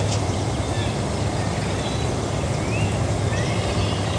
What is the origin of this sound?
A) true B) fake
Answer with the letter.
A